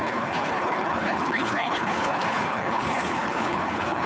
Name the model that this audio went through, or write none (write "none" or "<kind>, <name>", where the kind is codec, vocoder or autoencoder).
codec, HILCodec